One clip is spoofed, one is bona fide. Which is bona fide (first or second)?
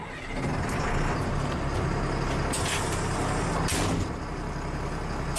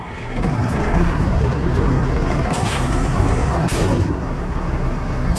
first